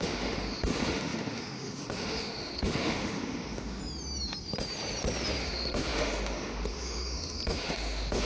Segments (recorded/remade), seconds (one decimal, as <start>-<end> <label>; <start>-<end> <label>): 0.0-3.8 remade; 3.8-5.4 recorded; 5.4-8.3 remade